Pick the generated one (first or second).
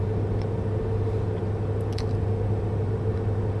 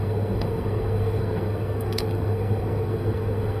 second